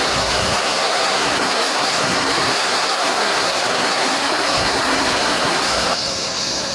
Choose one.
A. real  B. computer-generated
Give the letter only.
B